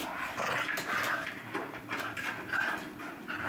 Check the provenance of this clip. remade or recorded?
recorded